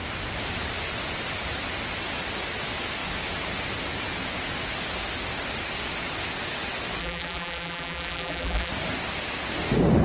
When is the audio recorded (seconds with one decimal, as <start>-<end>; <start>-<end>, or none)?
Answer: 0.0-7.0; 8.7-10.0